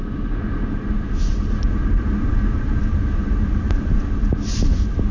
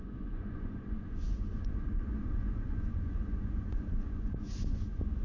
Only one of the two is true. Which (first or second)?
first